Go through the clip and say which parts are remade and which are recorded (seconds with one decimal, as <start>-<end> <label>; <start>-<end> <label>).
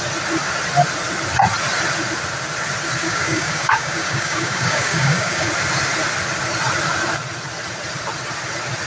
0.0-3.0 recorded; 3.0-5.5 remade; 5.5-8.9 recorded